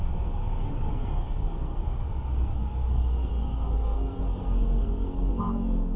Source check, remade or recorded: remade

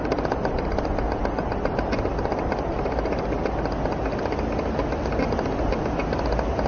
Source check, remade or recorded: recorded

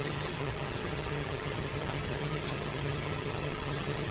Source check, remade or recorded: remade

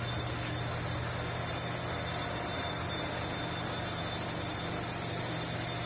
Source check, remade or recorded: recorded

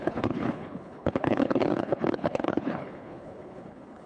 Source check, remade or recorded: remade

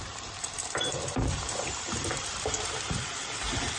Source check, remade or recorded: remade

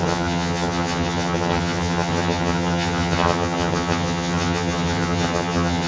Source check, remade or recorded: remade